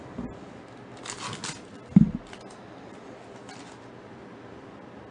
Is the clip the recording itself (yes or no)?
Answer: yes